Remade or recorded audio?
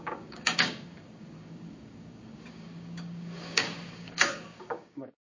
remade